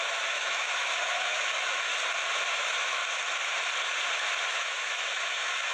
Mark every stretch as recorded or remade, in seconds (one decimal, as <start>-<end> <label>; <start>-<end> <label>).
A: 0.0-1.9 remade; 1.9-2.5 recorded; 2.5-3.0 remade; 3.0-4.5 recorded; 4.5-5.7 remade